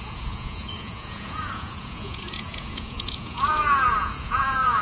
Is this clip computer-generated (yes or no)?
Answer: yes